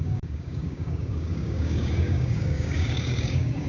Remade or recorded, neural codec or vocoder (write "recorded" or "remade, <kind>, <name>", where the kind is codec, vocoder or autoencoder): remade, codec, DAC